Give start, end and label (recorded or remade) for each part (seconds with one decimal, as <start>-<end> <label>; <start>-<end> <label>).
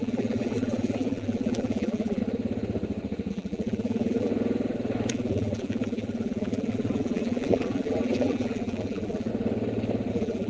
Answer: 0.0-2.2 remade; 2.2-3.3 recorded; 3.3-4.3 remade; 4.3-5.1 recorded; 5.1-9.3 remade; 9.3-10.1 recorded; 10.1-10.5 remade